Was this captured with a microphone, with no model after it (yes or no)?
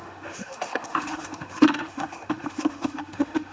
no